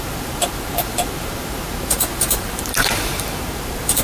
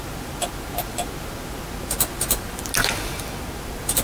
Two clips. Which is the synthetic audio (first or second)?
first